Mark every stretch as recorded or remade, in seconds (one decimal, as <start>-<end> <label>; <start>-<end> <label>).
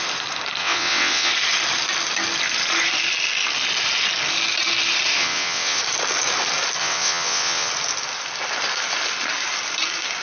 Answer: 0.0-0.6 recorded; 0.6-1.3 remade; 1.3-5.2 recorded; 5.2-5.8 remade; 5.8-6.8 recorded; 6.8-7.7 remade; 7.7-10.2 recorded